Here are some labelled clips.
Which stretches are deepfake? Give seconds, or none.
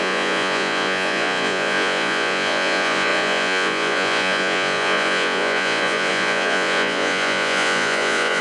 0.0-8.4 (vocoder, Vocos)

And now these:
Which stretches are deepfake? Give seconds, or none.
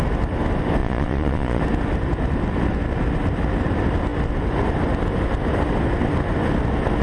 0.8-1.6 (vocoder, Vocos)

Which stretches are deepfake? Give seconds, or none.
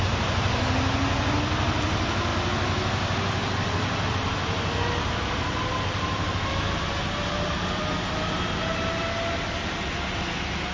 none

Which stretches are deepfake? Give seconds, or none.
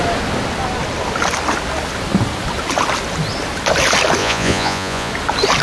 4.2-5.1 (vocoder, Vocos)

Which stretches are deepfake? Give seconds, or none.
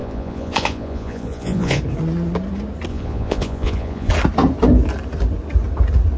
0.0-1.8 (vocoder, Vocos); 2.9-4.1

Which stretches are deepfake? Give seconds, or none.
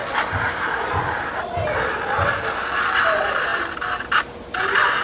none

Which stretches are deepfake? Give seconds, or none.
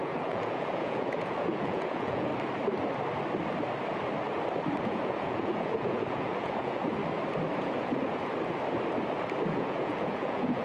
0.0-2.3 (vocoder, Vocos); 4.8-7.0; 7.6-8.3; 9.5-10.6